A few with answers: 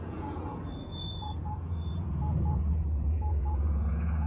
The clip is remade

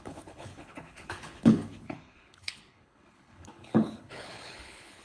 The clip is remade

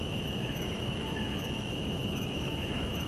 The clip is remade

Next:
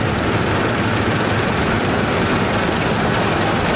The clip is remade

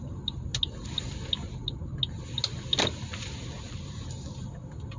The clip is recorded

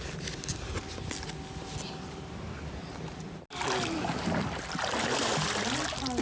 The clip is recorded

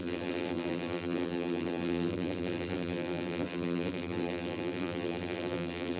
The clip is remade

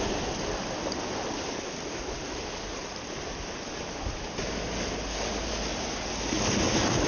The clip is recorded